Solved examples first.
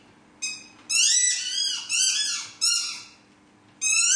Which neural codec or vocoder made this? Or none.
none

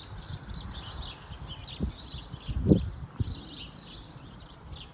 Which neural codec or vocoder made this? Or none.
none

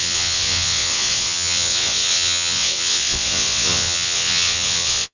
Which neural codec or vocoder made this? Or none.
vocoder, WaveNeXt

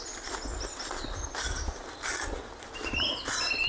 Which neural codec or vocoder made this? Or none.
none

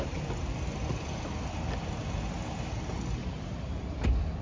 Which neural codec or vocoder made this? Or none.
none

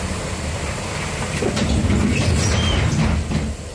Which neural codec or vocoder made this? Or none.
none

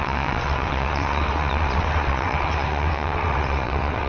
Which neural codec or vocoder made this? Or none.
vocoder, WaveNeXt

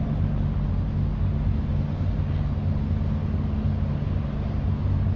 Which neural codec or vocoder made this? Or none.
none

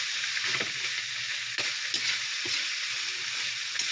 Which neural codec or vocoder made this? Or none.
none